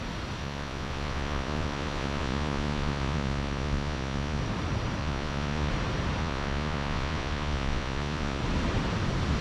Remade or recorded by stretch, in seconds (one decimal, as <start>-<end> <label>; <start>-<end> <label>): 0.0-0.4 recorded; 0.4-4.4 remade; 4.4-5.0 recorded; 5.0-5.7 remade; 5.7-6.2 recorded; 6.2-8.4 remade; 8.4-9.4 recorded